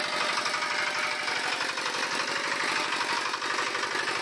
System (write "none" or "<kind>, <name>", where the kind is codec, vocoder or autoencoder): none